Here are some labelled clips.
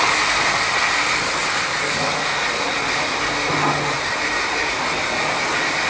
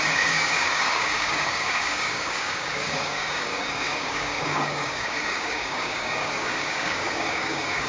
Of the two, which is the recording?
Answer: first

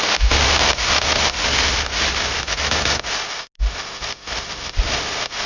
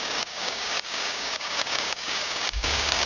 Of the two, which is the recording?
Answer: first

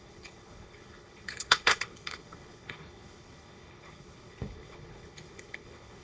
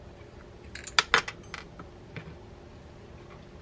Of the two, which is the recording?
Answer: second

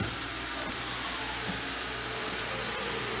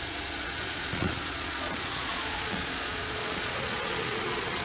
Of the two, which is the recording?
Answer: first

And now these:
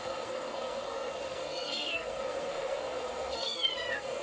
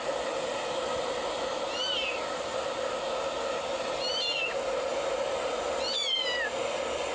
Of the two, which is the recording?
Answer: second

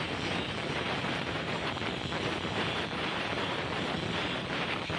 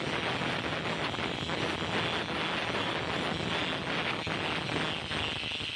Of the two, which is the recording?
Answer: second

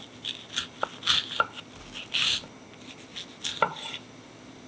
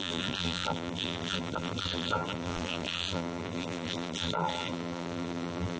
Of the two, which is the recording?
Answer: first